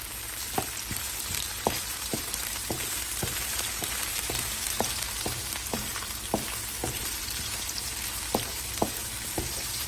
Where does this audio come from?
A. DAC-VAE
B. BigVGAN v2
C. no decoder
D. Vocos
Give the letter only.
B